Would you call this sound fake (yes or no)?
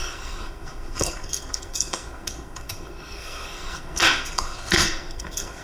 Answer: yes